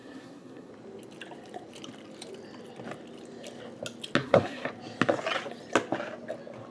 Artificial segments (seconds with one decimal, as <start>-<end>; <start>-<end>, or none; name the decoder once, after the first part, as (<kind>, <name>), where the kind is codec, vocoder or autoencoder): 0.0-0.7 (codec, SNAC); 4.2-4.7